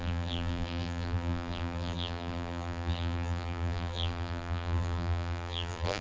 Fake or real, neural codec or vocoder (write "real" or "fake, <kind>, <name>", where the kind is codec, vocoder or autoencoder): fake, vocoder, BigVGAN v2